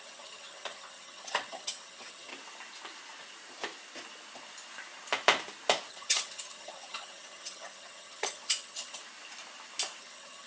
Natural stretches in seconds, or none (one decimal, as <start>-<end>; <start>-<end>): 2.3-5.9; 9.0-10.0